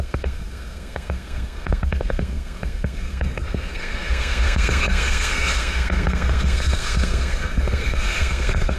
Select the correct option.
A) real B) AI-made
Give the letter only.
B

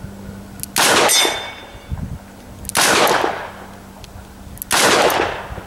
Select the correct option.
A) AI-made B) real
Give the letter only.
B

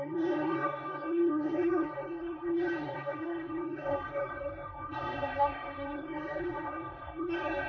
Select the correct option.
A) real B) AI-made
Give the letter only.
B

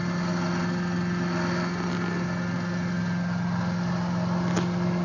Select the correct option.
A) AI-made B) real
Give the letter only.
B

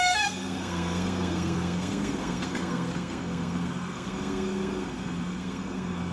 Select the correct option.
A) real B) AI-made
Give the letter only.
B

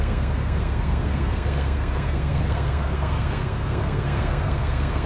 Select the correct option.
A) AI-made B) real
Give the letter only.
A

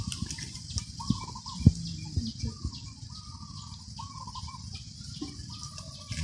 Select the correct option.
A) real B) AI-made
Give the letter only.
A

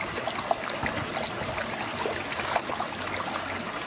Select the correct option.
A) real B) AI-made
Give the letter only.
A